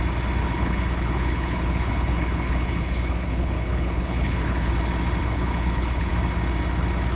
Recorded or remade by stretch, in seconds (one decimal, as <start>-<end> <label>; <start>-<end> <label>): 0.0-0.4 recorded; 0.4-4.7 remade; 4.7-5.2 recorded; 5.2-6.1 remade; 6.1-7.2 recorded

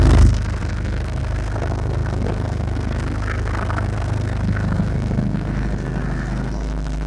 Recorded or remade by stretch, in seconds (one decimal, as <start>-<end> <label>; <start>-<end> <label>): 0.0-7.1 remade